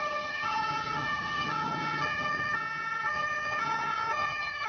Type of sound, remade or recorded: remade